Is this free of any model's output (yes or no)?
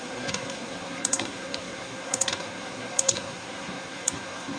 no